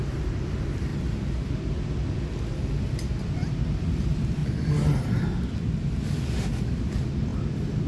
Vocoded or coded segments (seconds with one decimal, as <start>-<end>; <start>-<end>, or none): none